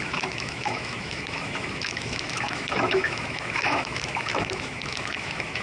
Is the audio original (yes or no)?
no